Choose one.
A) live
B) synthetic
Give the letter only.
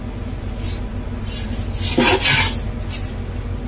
A